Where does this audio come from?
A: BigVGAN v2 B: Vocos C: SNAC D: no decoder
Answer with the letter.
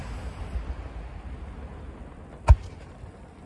D